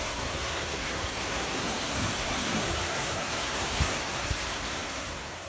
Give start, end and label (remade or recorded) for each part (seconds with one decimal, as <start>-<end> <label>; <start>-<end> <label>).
0.0-5.5 remade